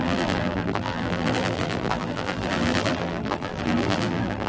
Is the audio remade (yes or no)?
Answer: yes